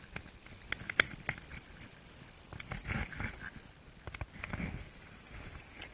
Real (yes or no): yes